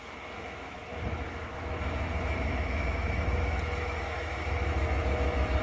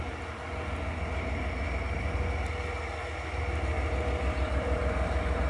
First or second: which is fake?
first